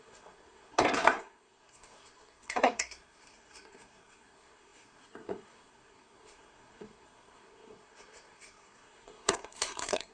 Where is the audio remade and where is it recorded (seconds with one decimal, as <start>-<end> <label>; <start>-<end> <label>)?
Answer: 0.0-10.1 remade